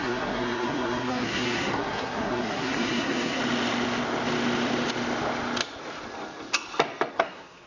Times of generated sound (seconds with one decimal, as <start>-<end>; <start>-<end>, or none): 0.0-3.4; 7.1-7.7